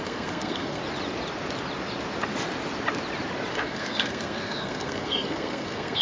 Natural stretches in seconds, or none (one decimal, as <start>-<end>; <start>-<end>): 0.8-3.5